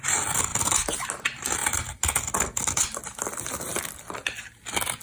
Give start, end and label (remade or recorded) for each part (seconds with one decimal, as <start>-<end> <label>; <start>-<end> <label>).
0.0-5.0 recorded